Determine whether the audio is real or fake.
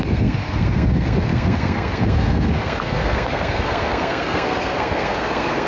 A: fake